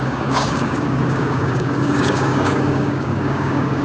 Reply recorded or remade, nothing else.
remade